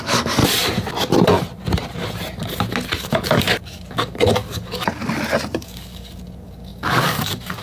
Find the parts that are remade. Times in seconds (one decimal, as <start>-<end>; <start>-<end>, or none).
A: 0.0-0.4; 3.0-5.0; 5.6-7.6